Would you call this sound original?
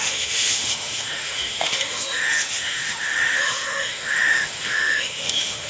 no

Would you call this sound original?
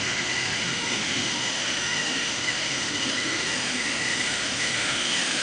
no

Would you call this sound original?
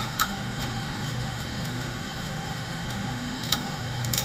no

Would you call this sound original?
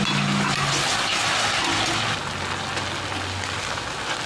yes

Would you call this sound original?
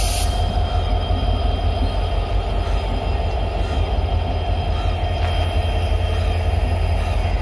yes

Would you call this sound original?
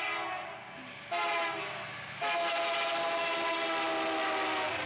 yes